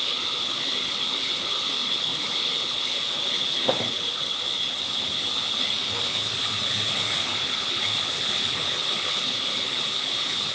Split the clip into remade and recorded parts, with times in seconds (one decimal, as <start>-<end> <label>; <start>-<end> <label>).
0.0-10.5 remade